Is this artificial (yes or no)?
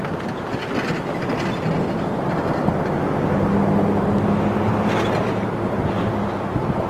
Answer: no